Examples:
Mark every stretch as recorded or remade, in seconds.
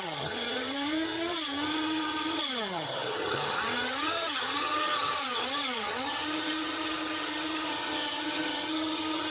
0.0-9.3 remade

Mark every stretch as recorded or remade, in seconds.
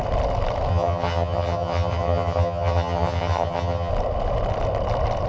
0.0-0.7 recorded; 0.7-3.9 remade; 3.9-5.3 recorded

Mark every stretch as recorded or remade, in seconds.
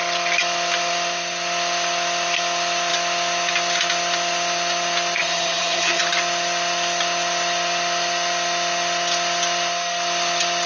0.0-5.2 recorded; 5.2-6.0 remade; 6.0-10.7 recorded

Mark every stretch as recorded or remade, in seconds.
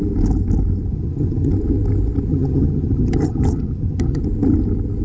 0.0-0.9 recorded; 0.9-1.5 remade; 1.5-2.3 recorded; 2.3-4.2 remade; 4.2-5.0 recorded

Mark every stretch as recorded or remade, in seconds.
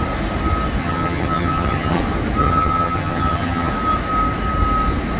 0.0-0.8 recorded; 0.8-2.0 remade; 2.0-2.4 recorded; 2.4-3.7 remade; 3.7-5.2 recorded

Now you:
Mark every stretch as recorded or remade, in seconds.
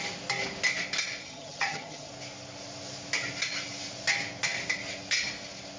0.0-1.2 recorded; 1.2-2.1 remade; 2.1-5.8 recorded